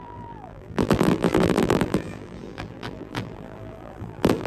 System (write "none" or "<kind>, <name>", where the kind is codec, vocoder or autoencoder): vocoder, BigVGAN v2